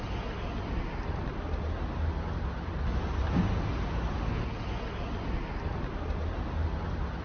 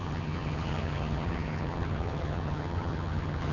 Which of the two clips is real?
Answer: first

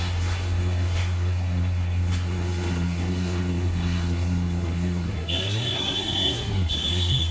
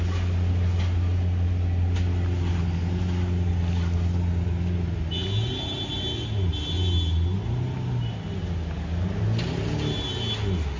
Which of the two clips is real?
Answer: second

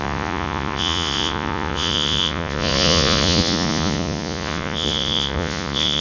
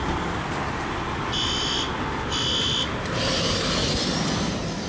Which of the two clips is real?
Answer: second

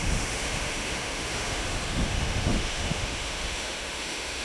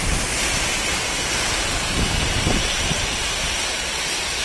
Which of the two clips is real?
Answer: second